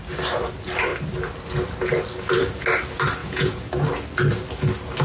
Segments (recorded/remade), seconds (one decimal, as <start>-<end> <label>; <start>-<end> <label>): 0.0-3.2 recorded; 3.2-3.7 remade; 3.7-5.0 recorded